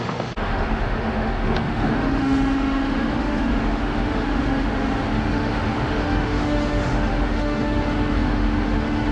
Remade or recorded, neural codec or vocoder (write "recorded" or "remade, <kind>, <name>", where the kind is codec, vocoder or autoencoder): remade, autoencoder, DAC-VAE